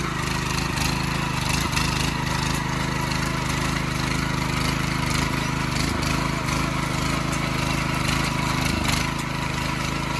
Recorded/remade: recorded